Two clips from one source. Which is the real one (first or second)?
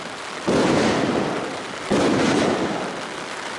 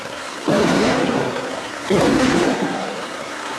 first